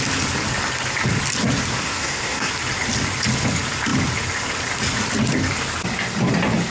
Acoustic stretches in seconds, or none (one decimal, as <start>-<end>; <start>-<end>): 0.0-1.7; 2.5-6.7